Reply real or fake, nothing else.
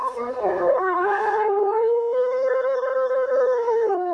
fake